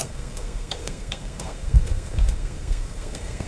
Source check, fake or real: fake